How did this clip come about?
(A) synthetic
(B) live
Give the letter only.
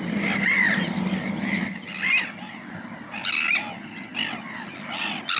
B